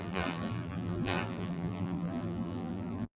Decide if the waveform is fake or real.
fake